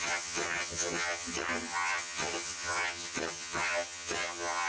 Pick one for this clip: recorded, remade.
remade